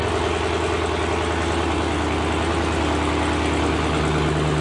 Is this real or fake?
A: real